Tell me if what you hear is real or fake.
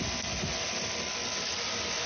real